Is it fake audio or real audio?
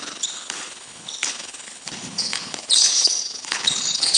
fake